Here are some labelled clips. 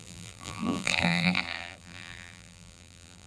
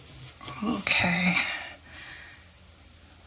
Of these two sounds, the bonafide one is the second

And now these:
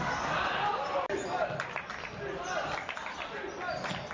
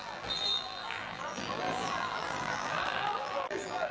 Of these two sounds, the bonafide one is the first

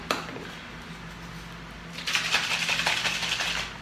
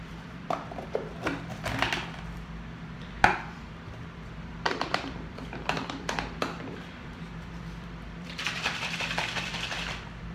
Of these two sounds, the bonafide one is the first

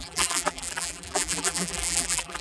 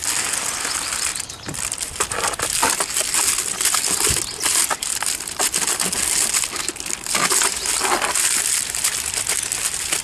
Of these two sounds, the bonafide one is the second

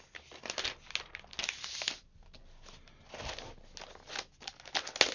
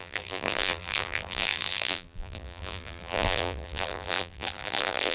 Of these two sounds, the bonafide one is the first